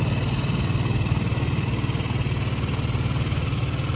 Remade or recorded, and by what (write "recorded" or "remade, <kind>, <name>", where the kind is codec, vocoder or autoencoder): recorded